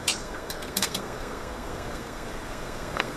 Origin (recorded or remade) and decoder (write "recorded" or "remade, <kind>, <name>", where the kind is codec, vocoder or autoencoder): remade, codec, SNAC